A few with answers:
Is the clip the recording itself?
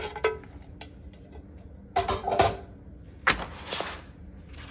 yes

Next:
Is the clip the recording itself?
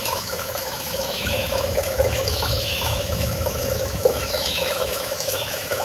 no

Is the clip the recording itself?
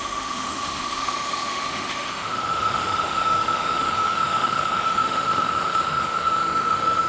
no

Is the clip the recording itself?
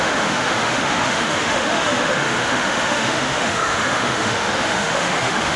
no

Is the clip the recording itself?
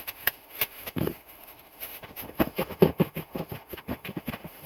no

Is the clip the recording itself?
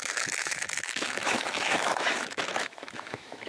no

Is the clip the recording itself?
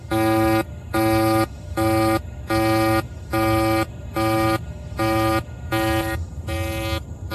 no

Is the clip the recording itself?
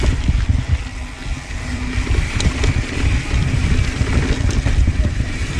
yes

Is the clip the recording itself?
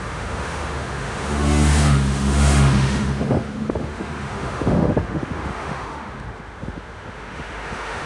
no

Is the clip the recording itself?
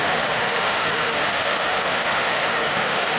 no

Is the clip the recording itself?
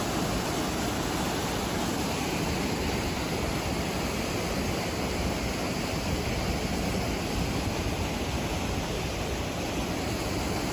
yes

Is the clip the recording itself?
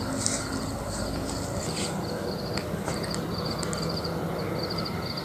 yes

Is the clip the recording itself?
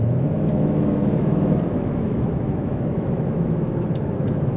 no